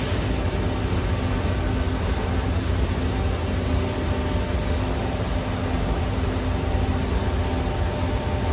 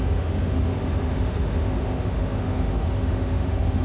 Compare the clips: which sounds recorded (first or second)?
first